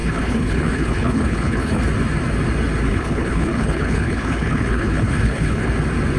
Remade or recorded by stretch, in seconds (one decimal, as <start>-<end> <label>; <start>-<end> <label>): 0.0-1.8 remade; 1.8-2.9 recorded; 2.9-5.7 remade; 5.7-6.2 recorded